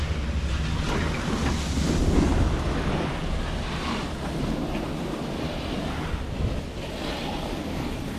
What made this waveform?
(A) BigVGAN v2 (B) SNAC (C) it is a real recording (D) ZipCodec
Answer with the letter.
C